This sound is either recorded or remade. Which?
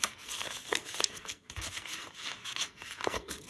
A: remade